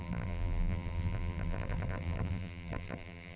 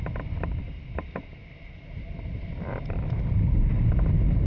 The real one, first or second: second